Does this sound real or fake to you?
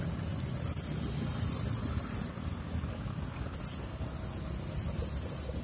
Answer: real